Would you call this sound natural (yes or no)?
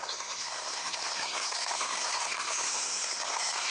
no